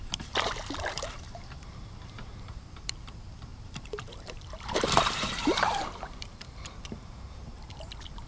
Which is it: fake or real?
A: fake